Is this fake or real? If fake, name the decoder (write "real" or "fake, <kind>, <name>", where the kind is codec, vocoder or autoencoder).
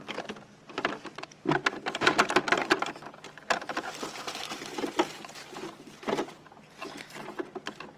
real